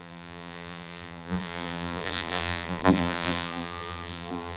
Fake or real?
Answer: fake